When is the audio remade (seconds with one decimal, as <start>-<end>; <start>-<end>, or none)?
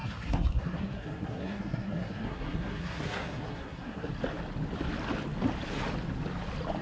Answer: 0.0-4.1